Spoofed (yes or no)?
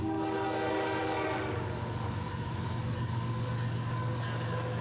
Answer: yes